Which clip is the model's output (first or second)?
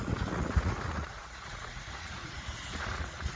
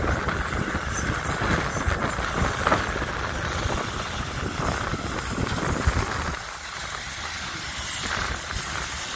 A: first